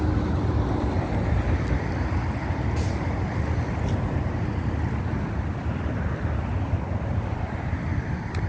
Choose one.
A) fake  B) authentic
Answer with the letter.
B